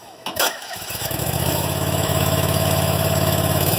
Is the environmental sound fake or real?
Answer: fake